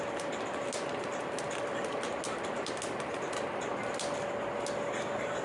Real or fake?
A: real